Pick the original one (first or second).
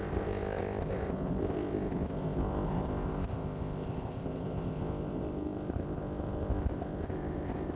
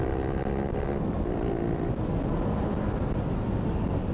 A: second